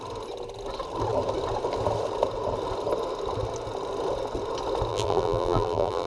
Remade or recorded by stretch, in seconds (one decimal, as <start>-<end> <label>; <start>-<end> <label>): 0.0-4.9 recorded; 4.9-6.1 remade